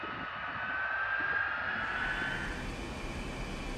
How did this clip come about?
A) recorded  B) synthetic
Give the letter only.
A